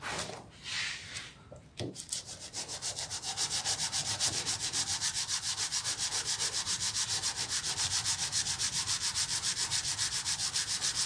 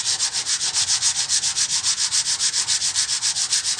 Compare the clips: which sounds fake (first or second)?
first